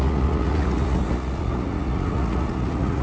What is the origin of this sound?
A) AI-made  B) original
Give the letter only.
A